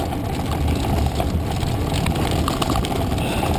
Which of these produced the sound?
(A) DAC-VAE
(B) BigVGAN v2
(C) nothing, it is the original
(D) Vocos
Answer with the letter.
C